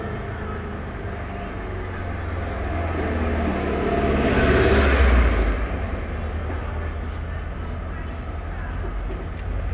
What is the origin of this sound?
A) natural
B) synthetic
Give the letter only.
A